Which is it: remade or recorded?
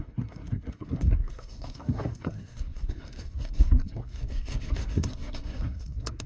remade